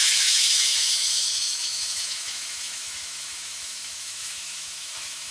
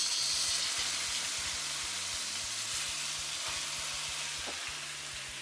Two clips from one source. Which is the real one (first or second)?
second